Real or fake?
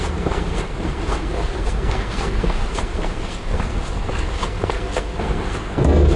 fake